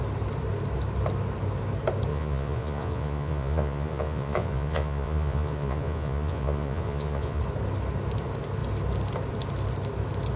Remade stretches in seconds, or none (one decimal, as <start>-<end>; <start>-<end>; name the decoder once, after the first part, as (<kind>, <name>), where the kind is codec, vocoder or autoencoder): 2.1-7.4 (vocoder, Vocos)